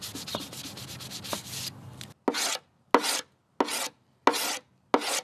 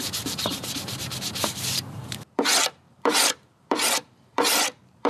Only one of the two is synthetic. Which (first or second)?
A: second